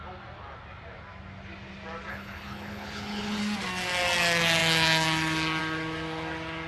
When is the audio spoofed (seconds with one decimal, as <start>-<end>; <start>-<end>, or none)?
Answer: 2.1-3.4